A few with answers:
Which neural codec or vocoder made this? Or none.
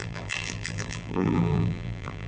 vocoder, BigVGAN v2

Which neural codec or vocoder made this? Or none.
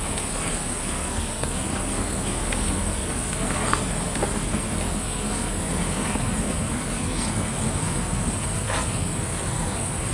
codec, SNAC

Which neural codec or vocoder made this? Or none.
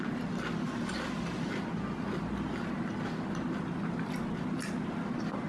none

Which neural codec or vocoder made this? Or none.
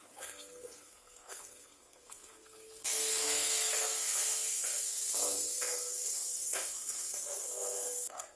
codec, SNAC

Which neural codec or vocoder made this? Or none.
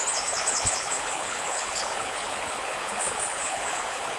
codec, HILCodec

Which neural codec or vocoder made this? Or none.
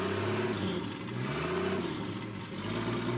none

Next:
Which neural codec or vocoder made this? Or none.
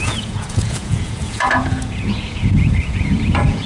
vocoder, Vocos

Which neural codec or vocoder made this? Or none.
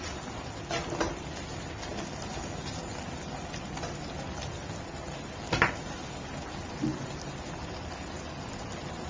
none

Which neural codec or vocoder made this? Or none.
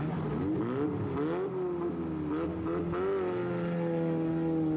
none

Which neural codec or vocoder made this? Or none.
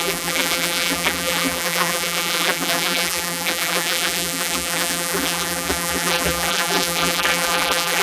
vocoder, BigVGAN v2